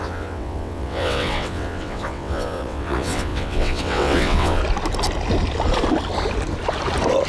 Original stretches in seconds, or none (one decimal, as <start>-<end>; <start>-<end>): 4.6-7.3

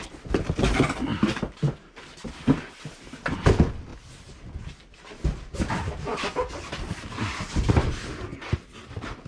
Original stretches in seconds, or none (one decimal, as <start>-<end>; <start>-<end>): 0.0-9.3